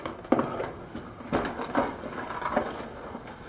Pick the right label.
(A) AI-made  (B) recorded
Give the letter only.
B